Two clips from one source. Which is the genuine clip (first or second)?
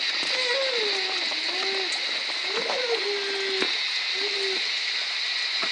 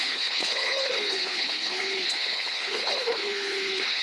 first